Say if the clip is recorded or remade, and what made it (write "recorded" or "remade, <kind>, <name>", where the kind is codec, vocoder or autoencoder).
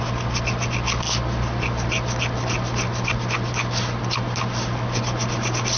recorded